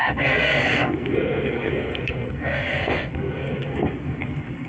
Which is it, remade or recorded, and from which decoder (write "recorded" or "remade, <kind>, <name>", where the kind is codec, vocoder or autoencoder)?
remade, codec, SNAC